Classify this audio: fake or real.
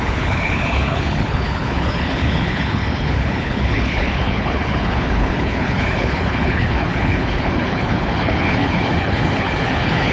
fake